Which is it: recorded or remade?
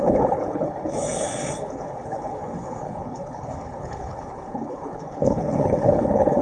remade